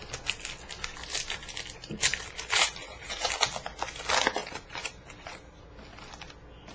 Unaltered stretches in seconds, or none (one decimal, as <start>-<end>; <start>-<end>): 0.0-1.8; 3.3-4.4; 5.6-6.7